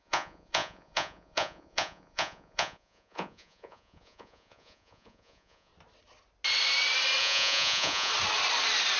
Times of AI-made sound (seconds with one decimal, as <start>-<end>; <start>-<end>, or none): 0.0-5.7; 7.2-8.1